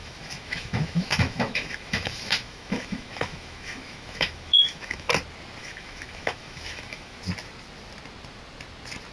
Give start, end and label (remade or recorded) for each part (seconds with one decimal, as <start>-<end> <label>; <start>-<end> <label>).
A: 0.0-5.1 remade; 5.1-5.6 recorded; 5.6-7.2 remade; 7.2-9.1 recorded